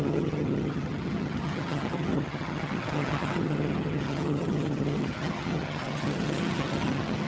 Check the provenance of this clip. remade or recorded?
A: remade